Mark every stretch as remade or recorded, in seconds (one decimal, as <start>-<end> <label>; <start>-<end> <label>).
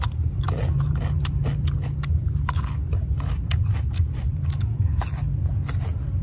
0.0-3.0 recorded; 3.0-4.9 remade; 4.9-6.2 recorded